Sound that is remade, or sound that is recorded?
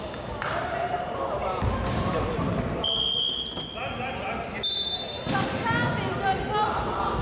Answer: recorded